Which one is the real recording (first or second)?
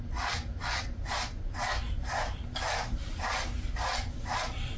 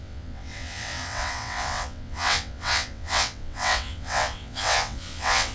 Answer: first